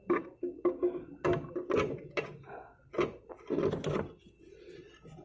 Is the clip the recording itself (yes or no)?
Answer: yes